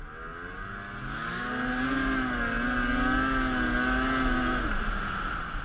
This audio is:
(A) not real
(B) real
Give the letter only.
B